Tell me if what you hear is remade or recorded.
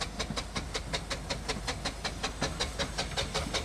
recorded